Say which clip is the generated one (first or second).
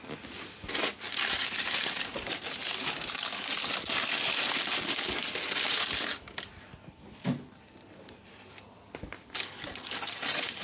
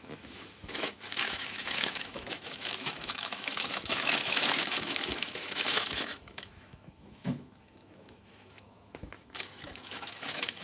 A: second